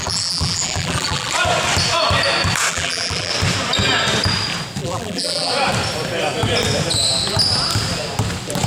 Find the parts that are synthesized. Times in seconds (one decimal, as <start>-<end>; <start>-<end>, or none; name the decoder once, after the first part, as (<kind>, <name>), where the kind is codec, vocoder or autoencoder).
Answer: 0.0-1.3 (vocoder, BigVGAN v2); 2.7-3.3; 4.8-5.5